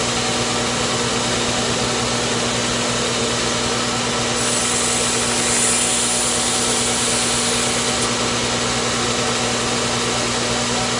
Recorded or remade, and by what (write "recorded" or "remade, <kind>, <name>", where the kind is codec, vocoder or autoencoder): recorded